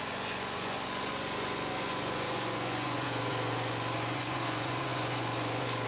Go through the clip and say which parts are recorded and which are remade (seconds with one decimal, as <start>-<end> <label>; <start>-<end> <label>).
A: 0.0-5.9 remade